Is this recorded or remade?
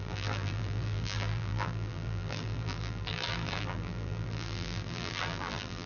remade